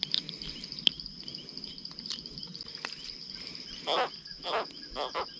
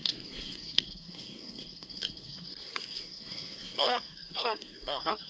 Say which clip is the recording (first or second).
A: first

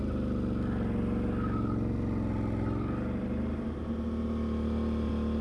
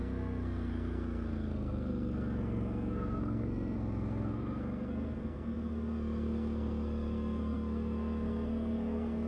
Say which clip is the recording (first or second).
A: first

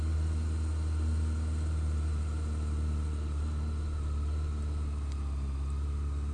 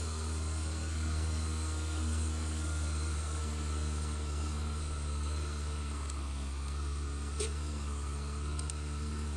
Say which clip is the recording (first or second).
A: first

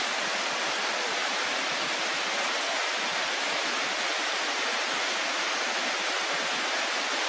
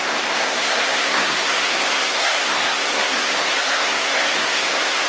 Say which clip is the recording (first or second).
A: first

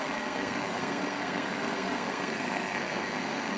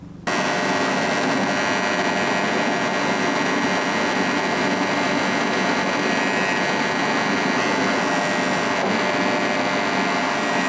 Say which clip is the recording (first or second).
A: second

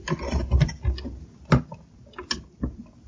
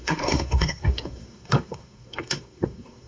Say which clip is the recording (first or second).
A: first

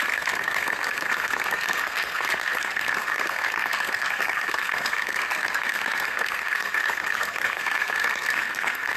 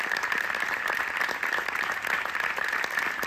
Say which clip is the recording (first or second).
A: second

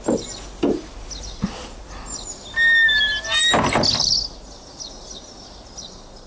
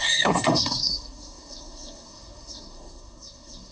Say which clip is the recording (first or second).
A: first